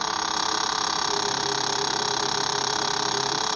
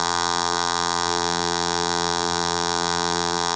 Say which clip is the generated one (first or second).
second